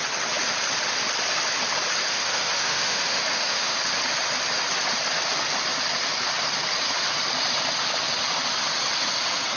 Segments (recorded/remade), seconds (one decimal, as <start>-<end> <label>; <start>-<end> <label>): 0.0-2.1 recorded; 2.1-3.8 remade; 3.8-9.6 recorded